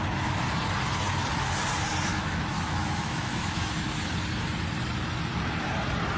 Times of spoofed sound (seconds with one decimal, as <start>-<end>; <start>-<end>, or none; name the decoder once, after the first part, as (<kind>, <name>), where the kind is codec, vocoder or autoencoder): 2.1-4.0 (autoencoder, DAC-VAE)